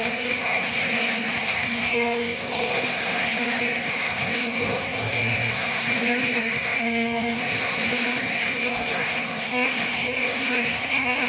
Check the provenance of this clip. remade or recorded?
remade